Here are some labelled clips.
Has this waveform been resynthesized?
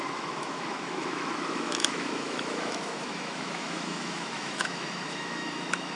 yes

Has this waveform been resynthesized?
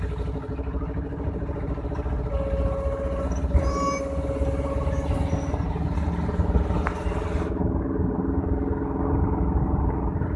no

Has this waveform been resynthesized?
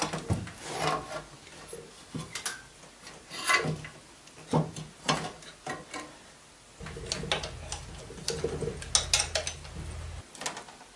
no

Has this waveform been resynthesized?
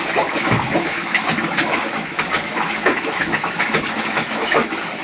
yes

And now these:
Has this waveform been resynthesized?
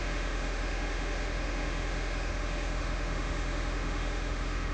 yes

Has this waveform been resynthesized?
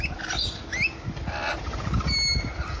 no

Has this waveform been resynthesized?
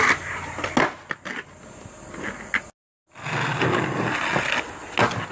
no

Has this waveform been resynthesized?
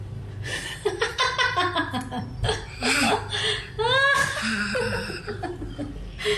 no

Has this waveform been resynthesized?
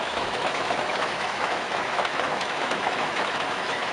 yes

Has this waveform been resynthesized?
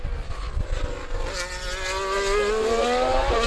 no